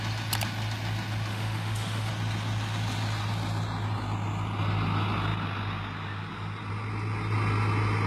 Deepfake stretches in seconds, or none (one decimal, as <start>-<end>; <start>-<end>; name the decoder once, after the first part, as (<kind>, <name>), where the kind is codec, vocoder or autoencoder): 1.3-2.1 (autoencoder, DAC-VAE)